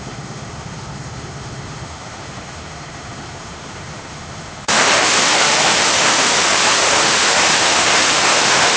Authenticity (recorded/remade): remade